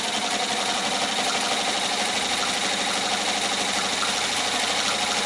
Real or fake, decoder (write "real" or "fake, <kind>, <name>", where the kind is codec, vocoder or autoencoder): real